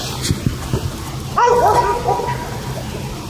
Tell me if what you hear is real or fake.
real